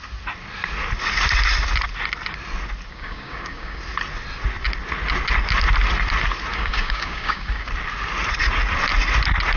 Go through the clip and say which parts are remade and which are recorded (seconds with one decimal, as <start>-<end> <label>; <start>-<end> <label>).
0.0-2.9 recorded; 2.9-3.8 remade; 3.8-6.5 recorded; 6.5-7.7 remade; 7.7-9.6 recorded